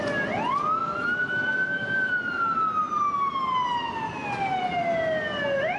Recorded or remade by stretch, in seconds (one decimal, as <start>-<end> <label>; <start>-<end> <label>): 0.0-0.8 recorded; 0.8-2.1 remade; 2.1-5.8 recorded